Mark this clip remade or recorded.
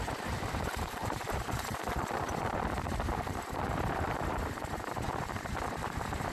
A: remade